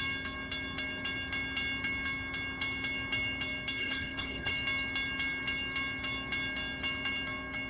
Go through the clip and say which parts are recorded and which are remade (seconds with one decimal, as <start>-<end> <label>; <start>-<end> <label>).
0.0-3.8 recorded; 3.8-4.5 remade; 4.5-7.7 recorded